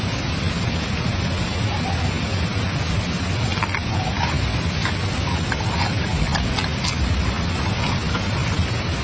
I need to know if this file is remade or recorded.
recorded